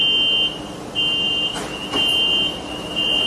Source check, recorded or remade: recorded